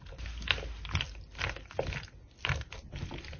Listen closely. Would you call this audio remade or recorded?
recorded